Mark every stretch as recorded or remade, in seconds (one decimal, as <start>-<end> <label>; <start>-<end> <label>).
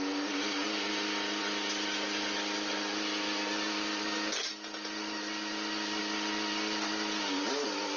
0.0-8.0 recorded